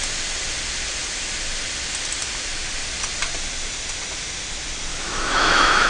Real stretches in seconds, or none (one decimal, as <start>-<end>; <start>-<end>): 0.0-4.9